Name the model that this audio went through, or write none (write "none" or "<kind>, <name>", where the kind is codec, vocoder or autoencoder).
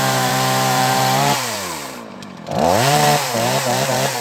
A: vocoder, BigVGAN v2